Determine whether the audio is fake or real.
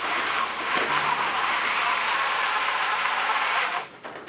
real